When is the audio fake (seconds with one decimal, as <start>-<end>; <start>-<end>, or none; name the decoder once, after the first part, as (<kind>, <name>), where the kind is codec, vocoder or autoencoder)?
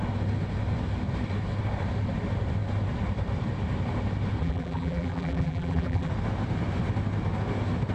4.4-6.1 (vocoder, BigVGAN v2)